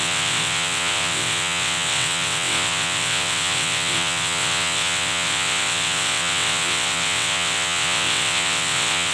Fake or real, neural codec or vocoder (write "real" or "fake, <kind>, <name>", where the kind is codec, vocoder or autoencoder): fake, vocoder, WaveNeXt